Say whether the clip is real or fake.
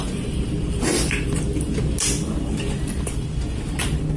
real